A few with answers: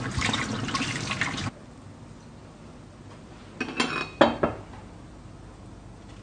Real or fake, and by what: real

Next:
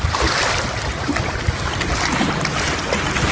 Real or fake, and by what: real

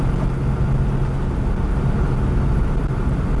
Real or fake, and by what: real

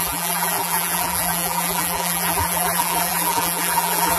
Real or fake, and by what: fake, vocoder, BigVGAN v2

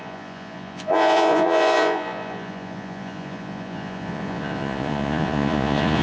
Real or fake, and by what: fake, vocoder, Vocos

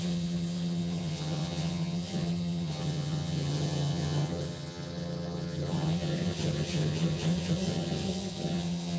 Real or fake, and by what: fake, vocoder, HiFi-GAN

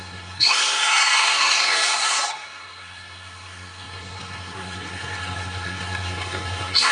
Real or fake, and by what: fake, codec, SNAC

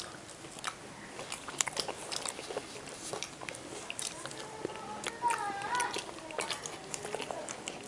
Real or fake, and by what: real